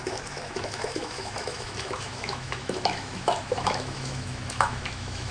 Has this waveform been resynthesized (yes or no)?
yes